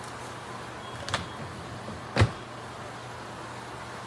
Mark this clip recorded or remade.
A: recorded